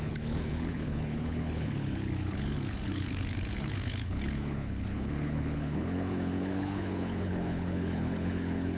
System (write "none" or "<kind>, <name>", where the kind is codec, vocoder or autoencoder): codec, HILCodec